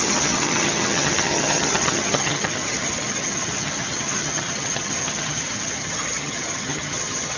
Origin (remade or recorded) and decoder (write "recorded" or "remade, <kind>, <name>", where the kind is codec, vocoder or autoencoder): remade, vocoder, HiFi-GAN